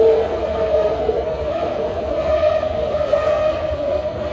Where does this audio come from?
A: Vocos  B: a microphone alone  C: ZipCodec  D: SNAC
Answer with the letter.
D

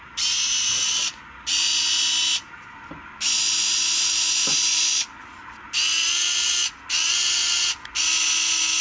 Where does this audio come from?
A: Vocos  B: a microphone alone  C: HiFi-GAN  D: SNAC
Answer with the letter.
B